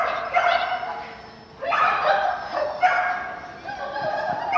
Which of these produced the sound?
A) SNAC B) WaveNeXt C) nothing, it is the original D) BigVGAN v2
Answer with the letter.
C